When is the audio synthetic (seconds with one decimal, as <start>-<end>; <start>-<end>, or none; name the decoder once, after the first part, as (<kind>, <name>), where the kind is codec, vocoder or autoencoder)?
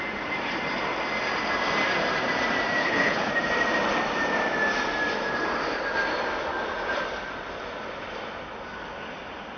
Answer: 2.8-3.3 (codec, HILCodec)